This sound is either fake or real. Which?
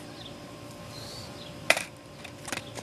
fake